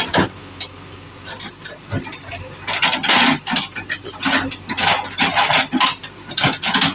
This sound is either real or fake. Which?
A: real